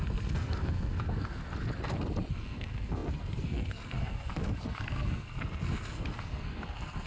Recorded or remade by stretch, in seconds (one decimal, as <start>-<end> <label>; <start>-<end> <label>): 0.0-1.4 remade; 1.4-2.3 recorded; 2.3-7.1 remade